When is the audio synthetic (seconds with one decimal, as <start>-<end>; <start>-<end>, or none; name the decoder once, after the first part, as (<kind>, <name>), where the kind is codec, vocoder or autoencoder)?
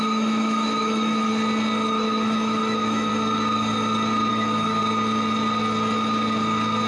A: 0.0-1.3 (autoencoder, DAC-VAE); 1.9-3.1; 4.3-4.8